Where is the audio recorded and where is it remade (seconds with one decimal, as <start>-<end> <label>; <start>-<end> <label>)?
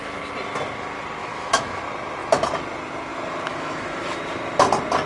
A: 0.0-1.2 recorded; 1.2-1.8 remade; 1.8-3.5 recorded; 3.5-4.2 remade; 4.2-5.1 recorded